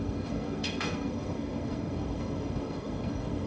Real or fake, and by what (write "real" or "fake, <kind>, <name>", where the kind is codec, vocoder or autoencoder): fake, codec, SNAC